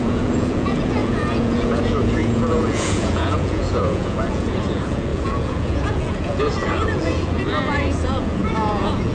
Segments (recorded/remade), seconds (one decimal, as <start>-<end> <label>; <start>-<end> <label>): 0.0-9.1 remade